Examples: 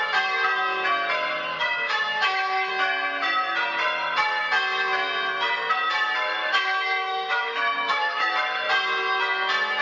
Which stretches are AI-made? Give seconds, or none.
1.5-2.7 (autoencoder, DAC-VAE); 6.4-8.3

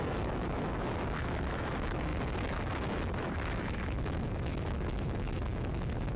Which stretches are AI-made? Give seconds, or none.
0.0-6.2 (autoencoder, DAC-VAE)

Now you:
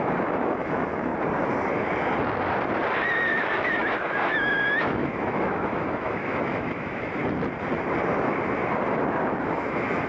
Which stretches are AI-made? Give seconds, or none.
0.0-1.1 (autoencoder, DAC-VAE); 3.3-7.2; 9.4-10.1